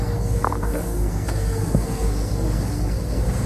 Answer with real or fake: fake